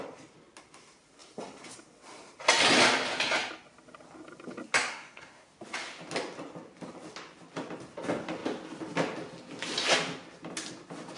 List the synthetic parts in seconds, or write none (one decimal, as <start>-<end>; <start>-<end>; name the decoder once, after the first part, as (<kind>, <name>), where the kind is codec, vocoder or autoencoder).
4.9-5.5 (codec, SNAC)